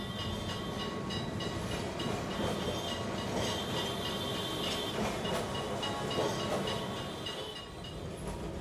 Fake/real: real